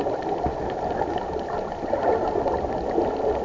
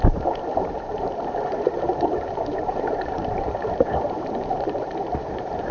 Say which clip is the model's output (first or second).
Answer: second